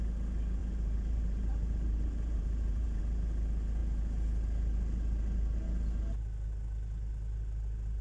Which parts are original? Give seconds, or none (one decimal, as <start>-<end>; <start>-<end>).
0.0-0.6; 3.0-8.0